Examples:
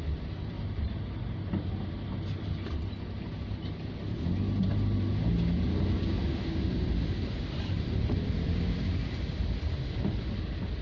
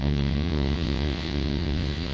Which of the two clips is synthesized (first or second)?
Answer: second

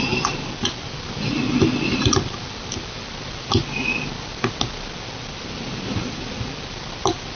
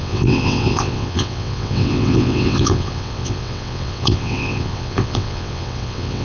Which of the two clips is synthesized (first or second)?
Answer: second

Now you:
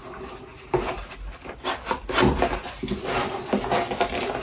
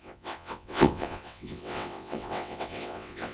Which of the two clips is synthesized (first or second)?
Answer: second